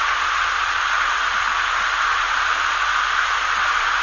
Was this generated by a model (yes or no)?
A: no